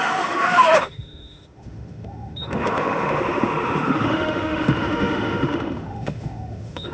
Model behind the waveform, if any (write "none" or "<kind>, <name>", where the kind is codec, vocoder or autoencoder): autoencoder, DAC-VAE